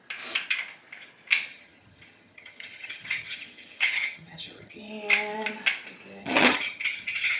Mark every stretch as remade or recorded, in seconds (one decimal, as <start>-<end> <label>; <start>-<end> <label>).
0.0-1.5 recorded; 1.5-4.9 remade; 4.9-6.2 recorded; 6.2-7.4 remade